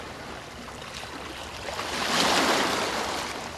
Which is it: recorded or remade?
recorded